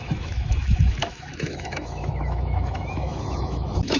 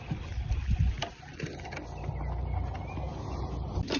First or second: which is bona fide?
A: second